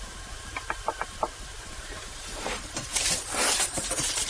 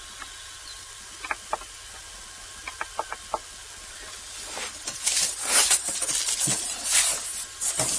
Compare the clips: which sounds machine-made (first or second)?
first